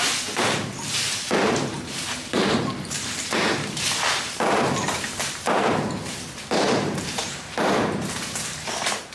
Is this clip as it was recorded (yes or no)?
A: no